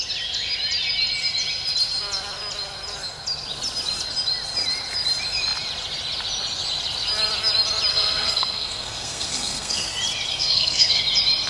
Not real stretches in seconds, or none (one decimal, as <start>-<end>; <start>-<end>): 7.9-9.9; 10.3-11.0

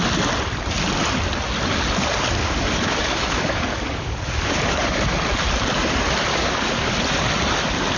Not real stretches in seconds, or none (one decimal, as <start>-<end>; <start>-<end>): 2.4-4.8; 6.3-6.9